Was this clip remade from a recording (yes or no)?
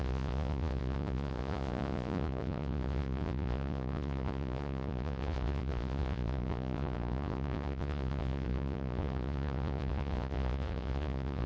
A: yes